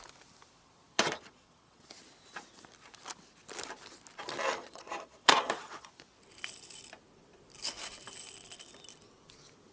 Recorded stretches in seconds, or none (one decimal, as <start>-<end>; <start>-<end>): 0.0-0.9; 1.9-4.6; 5.9-9.7